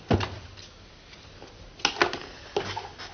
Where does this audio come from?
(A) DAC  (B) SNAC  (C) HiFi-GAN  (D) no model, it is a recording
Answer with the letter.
D